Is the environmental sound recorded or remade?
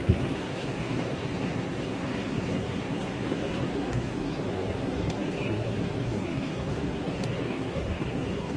remade